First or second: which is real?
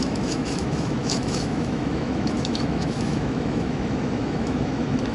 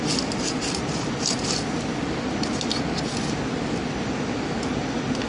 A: second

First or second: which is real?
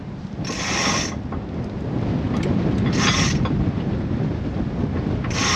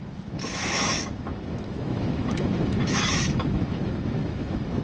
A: first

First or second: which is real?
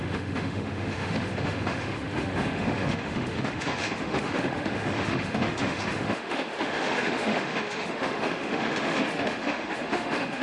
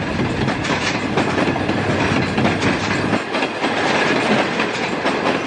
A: second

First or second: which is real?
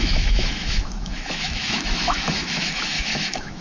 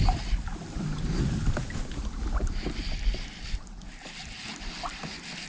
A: second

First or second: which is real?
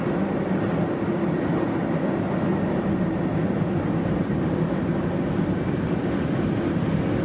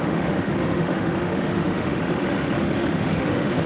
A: first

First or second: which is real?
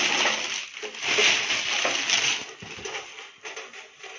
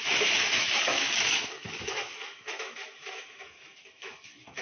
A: first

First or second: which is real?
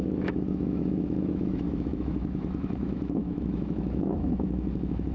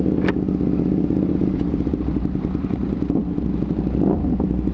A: second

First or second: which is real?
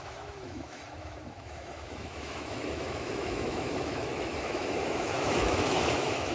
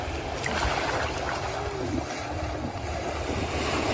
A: second